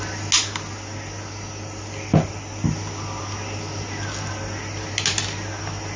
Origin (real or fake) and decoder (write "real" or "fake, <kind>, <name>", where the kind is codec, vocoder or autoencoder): real